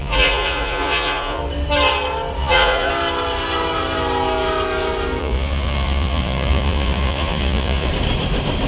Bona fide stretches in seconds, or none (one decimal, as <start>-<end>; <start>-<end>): 1.4-2.4; 2.9-5.2; 7.9-8.7